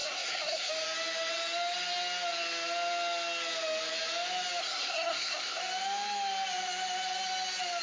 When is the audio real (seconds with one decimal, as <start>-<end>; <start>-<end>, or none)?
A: 0.7-4.6; 5.6-7.8